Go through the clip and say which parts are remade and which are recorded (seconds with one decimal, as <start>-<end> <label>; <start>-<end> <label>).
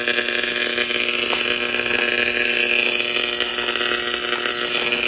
0.0-5.1 recorded